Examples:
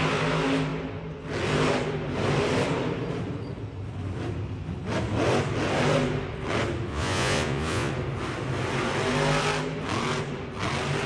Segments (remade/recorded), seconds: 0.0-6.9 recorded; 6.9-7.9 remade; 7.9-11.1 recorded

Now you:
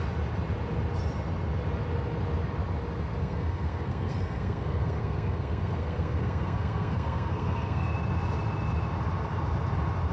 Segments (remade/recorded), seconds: 0.0-3.2 recorded; 3.2-7.9 remade; 7.9-10.1 recorded

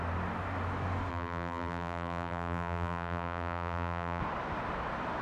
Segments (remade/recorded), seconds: 0.0-1.1 recorded; 1.1-4.2 remade; 4.2-5.2 recorded

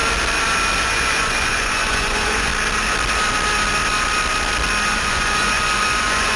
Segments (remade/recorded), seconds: 0.0-0.8 recorded; 0.8-2.5 remade; 2.5-4.9 recorded; 4.9-6.4 remade

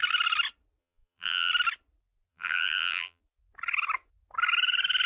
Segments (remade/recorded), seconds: 0.0-0.8 recorded; 0.8-1.5 remade; 1.5-2.3 recorded; 2.3-3.2 remade; 3.2-5.1 recorded

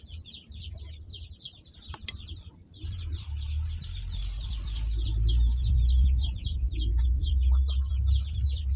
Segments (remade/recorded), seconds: 0.0-8.8 recorded

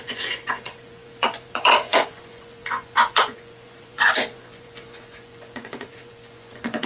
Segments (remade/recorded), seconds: 0.0-6.9 remade